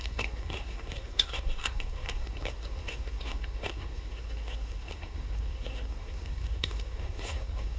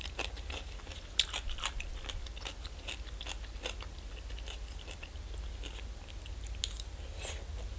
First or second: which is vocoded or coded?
first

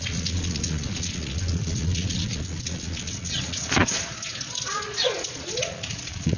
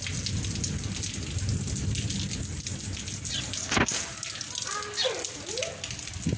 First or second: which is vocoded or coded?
first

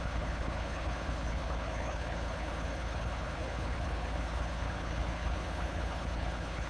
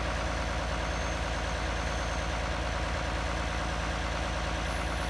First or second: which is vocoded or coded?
first